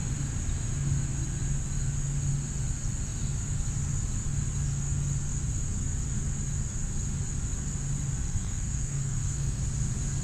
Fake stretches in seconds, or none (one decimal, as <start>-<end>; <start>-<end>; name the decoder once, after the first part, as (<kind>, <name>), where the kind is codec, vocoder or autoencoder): 8.3-9.6 (codec, SNAC)